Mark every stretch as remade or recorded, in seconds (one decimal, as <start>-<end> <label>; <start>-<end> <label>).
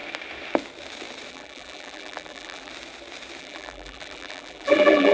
0.0-1.3 recorded; 1.3-2.7 remade; 2.7-3.4 recorded; 3.4-5.1 remade